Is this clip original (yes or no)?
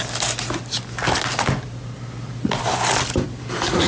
yes